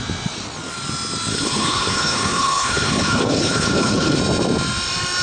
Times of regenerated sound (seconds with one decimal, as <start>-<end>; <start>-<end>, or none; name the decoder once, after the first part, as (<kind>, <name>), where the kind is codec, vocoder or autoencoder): 1.3-4.2 (codec, HILCodec)